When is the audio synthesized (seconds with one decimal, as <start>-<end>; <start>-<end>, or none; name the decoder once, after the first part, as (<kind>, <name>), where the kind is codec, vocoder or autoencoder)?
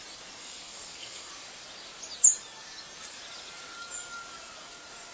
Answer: 0.4-1.3 (codec, SNAC)